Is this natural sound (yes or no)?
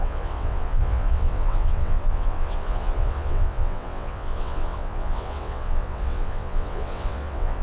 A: no